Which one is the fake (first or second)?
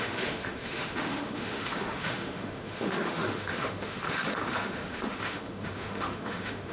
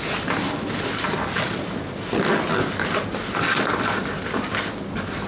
first